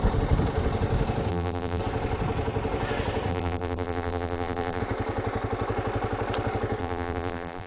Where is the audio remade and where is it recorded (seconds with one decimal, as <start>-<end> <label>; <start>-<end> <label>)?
0.0-1.3 recorded; 1.3-1.8 remade; 1.8-3.3 recorded; 3.3-4.8 remade; 4.8-6.8 recorded; 6.8-7.7 remade